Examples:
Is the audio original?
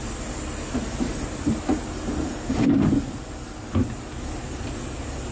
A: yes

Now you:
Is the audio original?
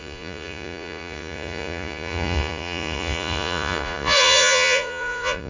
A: no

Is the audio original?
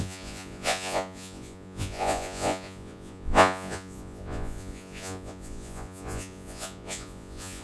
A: no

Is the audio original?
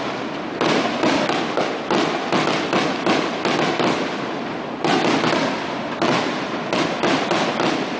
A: yes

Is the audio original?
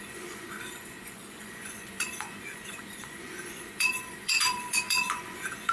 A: no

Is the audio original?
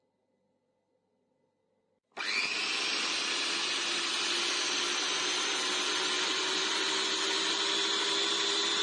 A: yes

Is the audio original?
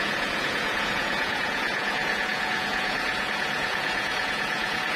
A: no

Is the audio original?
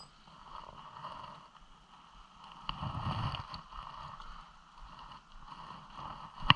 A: yes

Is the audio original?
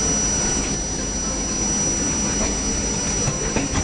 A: yes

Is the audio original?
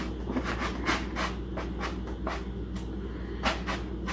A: yes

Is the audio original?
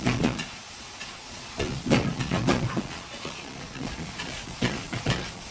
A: no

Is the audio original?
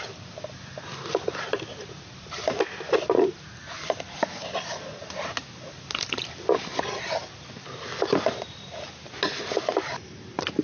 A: yes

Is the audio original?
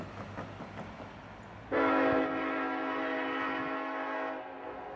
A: yes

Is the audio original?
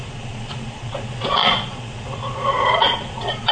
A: no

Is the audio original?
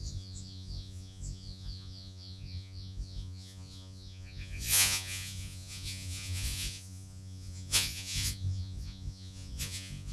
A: no